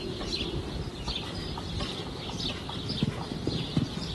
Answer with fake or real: real